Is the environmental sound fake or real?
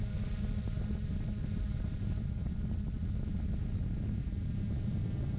real